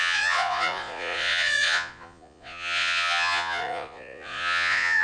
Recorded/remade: remade